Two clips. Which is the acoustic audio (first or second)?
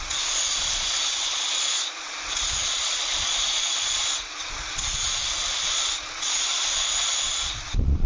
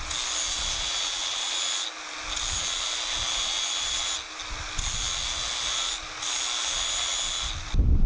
second